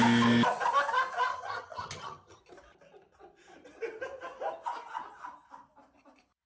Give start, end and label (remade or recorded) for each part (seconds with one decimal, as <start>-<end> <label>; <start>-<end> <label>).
0.0-1.3 recorded; 1.3-2.4 remade; 2.4-6.5 recorded